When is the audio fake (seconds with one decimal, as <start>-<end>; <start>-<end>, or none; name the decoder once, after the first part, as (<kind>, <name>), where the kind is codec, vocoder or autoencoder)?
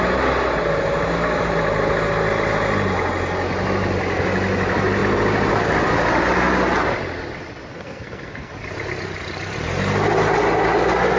7.7-8.5 (codec, SNAC)